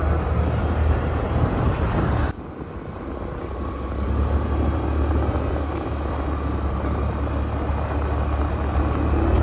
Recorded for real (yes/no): yes